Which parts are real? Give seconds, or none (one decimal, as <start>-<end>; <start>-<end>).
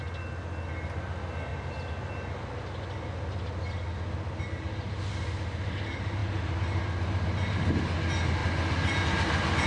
0.0-9.7